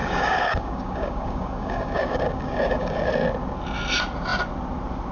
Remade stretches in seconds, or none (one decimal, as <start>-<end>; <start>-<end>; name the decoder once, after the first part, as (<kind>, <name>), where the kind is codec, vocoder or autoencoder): 0.0-3.1 (codec, DAC)